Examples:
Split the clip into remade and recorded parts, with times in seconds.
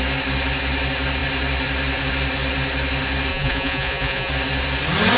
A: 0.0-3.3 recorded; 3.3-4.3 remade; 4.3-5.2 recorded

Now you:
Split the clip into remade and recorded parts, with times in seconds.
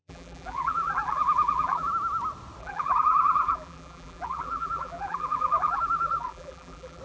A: 0.0-1.9 remade; 1.9-2.6 recorded; 2.6-7.0 remade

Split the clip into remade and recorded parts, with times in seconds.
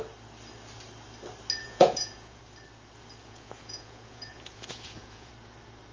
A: 0.0-1.6 recorded; 1.6-2.4 remade; 2.4-3.2 recorded; 3.2-5.3 remade; 5.3-5.9 recorded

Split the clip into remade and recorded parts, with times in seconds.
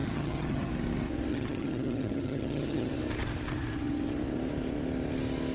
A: 0.0-0.7 remade; 0.7-1.3 recorded; 1.3-2.9 remade; 2.9-5.5 recorded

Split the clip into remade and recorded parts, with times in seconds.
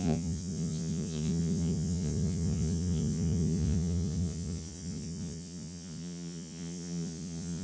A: 0.0-7.6 remade